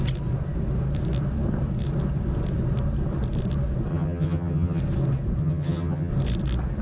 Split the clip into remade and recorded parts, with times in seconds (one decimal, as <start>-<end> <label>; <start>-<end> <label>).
0.0-3.9 recorded; 3.9-4.8 remade; 4.8-5.4 recorded; 5.4-6.1 remade; 6.1-6.8 recorded